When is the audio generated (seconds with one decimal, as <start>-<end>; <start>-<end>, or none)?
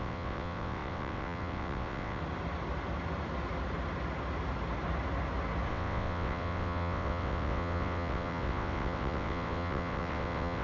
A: 0.0-2.2; 5.7-10.6